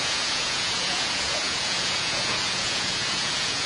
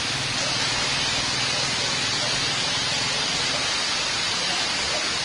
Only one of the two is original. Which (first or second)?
second